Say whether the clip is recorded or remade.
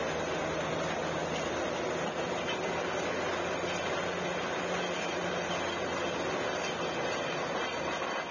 recorded